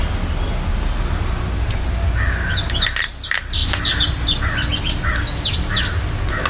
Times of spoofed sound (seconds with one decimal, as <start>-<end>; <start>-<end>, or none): none